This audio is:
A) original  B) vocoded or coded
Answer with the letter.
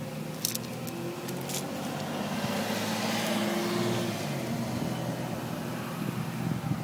A